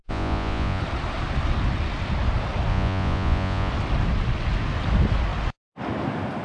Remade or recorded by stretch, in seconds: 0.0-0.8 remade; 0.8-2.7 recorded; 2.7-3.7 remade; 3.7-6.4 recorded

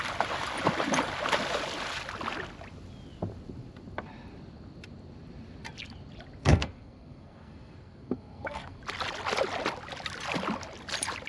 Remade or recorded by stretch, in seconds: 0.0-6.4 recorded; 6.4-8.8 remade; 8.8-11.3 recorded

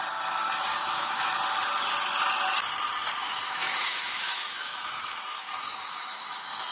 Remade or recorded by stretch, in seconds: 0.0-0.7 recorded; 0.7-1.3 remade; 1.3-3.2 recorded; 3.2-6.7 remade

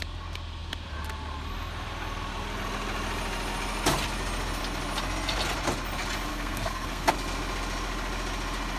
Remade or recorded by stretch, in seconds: 0.0-6.3 recorded; 6.3-7.1 remade; 7.1-8.8 recorded

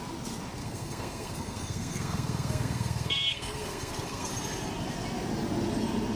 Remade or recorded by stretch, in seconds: 0.0-0.6 recorded; 0.6-4.3 remade; 4.3-6.2 recorded